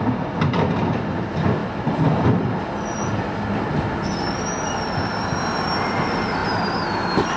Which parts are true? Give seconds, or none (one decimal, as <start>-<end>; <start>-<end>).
0.0-7.4